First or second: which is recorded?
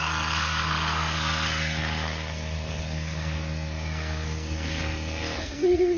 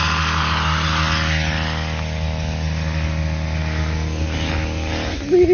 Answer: second